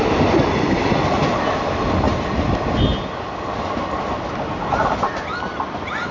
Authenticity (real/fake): real